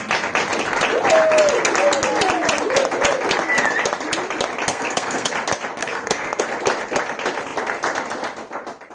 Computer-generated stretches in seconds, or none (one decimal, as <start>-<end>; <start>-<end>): 4.7-5.3; 5.8-6.4